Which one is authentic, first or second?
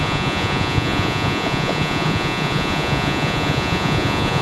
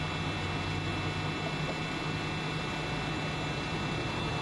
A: second